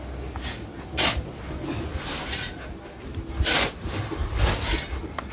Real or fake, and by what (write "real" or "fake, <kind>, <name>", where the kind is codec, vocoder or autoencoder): real